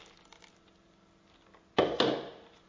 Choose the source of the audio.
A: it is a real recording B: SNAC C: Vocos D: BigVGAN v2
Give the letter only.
A